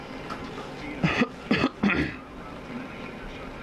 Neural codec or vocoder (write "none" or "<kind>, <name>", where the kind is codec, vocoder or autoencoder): none